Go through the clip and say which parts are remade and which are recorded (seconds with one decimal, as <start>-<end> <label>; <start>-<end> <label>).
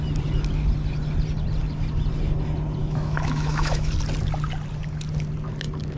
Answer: 0.0-2.8 recorded; 2.8-3.9 remade; 3.9-6.0 recorded